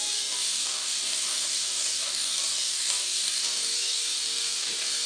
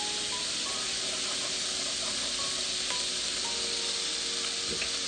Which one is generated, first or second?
first